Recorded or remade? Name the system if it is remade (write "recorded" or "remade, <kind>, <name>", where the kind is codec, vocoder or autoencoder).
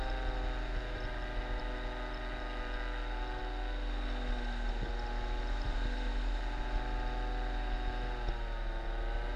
recorded